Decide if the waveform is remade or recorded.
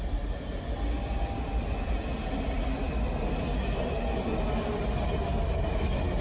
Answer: recorded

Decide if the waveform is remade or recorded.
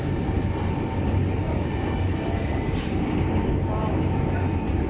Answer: recorded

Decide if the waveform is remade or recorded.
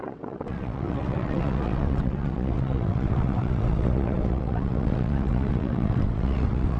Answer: remade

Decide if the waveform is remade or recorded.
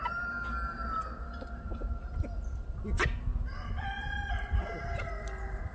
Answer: recorded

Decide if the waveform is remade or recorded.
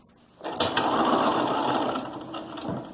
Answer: recorded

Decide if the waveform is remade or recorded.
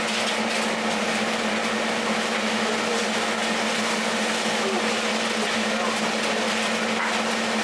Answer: recorded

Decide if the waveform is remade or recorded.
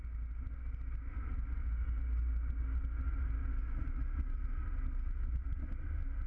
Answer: recorded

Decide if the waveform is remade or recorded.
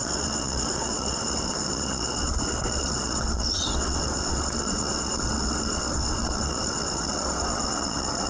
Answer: remade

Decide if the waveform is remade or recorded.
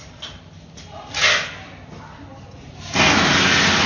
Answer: recorded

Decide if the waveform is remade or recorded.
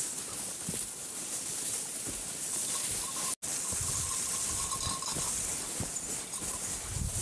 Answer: recorded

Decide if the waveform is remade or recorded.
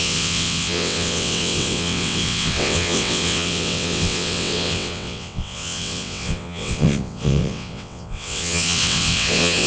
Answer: remade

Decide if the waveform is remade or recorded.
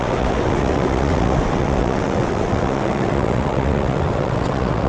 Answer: remade